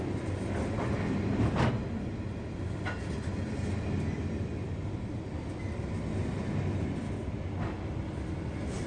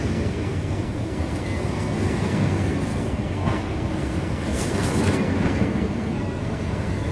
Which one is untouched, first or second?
first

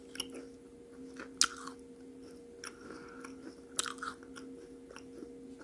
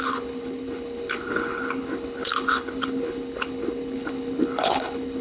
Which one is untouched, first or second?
first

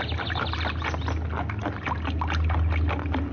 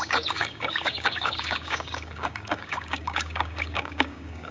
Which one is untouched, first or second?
first